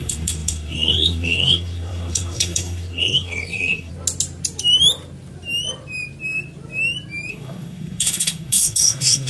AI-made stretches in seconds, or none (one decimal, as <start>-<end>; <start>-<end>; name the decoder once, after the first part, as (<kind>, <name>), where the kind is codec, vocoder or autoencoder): 0.0-3.9 (codec, SNAC); 7.3-9.3

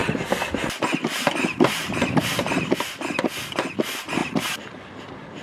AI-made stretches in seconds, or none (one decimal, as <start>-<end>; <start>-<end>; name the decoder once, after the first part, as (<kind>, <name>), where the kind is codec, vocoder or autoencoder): 0.0-3.2 (vocoder, BigVGAN v2); 4.2-5.0

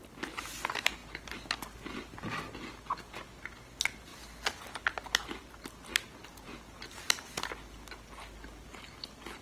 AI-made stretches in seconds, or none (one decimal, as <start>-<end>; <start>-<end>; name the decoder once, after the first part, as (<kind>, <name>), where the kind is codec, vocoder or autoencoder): 6.3-6.8 (vocoder, Vocos)

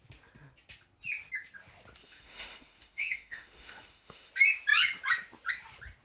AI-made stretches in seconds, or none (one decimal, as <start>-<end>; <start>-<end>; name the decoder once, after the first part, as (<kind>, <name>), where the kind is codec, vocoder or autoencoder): 2.0-4.3 (autoencoder, DAC-VAE)

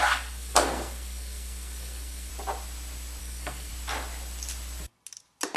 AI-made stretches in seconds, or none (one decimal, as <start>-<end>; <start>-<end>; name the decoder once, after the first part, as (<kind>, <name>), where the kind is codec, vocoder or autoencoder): 0.0-2.3 (codec, SNAC); 3.2-3.7

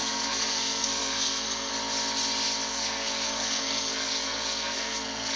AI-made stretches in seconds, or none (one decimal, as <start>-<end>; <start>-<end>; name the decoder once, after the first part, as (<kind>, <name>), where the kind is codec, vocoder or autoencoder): 0.0-1.7 (codec, SNAC); 2.7-5.4